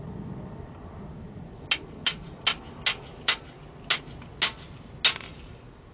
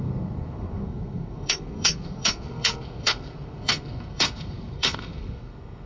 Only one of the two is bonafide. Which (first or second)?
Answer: first